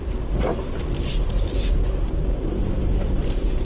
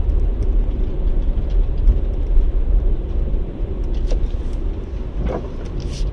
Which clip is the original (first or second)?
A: first